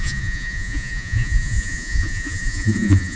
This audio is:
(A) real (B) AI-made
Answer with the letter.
B